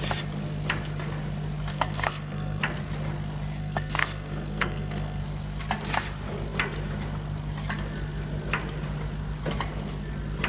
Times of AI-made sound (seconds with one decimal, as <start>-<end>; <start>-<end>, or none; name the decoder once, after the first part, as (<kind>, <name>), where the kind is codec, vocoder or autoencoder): 1.7-2.6 (codec, SNAC); 3.6-5.2